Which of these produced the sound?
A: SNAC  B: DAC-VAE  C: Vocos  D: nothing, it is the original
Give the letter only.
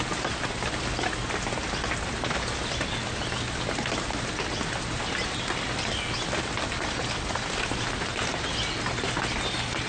D